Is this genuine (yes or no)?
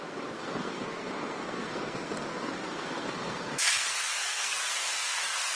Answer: no